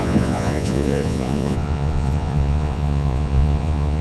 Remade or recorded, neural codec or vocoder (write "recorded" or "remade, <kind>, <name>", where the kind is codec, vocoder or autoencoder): remade, vocoder, Vocos